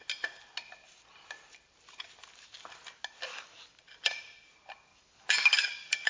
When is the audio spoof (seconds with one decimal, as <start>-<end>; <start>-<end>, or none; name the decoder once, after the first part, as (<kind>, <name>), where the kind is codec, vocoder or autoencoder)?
3.3-3.8 (codec, DAC); 4.9-6.1